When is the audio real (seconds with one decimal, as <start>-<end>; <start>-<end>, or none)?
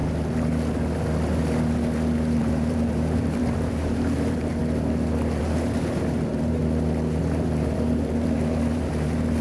0.0-2.4; 4.6-5.4; 6.6-7.2